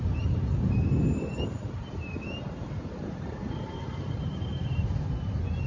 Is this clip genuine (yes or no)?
no